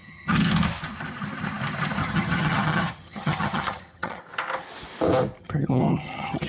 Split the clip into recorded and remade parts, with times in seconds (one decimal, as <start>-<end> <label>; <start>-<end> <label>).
0.0-0.5 remade; 0.5-2.0 recorded; 2.0-4.2 remade; 4.2-5.4 recorded; 5.4-6.5 remade